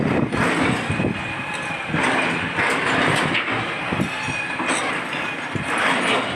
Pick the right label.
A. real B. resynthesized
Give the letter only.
A